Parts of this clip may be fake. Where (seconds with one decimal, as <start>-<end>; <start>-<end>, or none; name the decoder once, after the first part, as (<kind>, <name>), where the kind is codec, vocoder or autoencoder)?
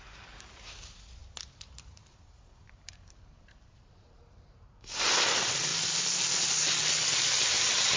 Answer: 0.0-1.2 (vocoder, BigVGAN v2); 1.8-5.7; 7.1-8.0